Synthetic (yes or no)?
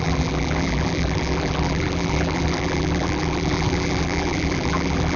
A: yes